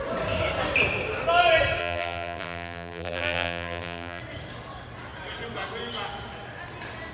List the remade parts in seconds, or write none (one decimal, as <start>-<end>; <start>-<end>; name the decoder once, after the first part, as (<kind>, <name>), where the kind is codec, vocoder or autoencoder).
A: 1.8-4.2 (vocoder, BigVGAN v2)